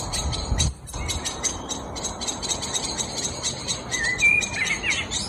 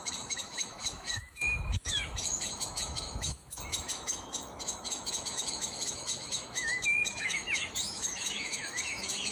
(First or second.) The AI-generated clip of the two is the second